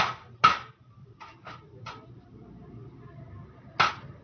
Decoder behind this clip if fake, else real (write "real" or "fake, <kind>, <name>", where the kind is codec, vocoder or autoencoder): real